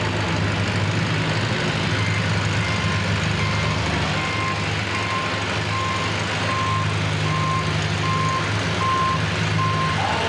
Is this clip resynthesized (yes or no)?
no